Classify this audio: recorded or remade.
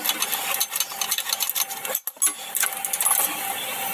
recorded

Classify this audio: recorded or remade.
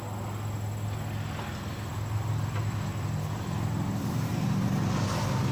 recorded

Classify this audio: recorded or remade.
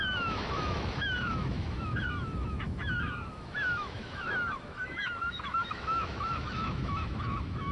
remade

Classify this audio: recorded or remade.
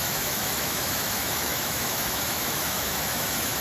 remade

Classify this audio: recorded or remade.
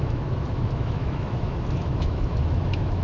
remade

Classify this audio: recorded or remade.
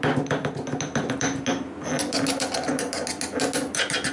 recorded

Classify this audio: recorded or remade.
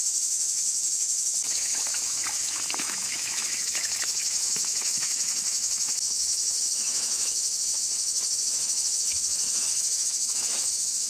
remade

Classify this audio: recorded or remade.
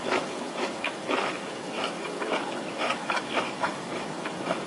remade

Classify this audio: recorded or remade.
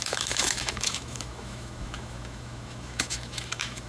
remade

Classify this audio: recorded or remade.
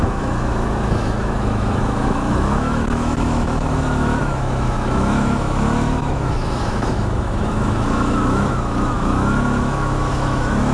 remade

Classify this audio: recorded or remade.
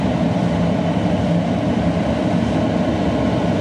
recorded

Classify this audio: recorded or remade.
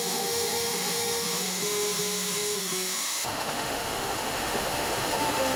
remade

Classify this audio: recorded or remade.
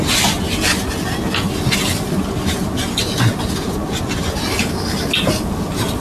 recorded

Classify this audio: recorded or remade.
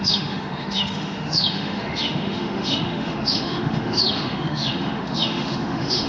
remade